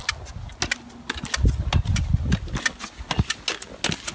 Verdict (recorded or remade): recorded